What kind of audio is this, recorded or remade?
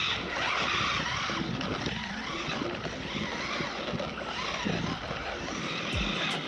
recorded